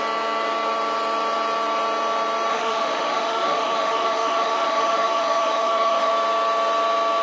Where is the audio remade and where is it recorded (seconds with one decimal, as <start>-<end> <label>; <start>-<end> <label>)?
0.0-2.5 recorded; 2.5-6.1 remade; 6.1-7.2 recorded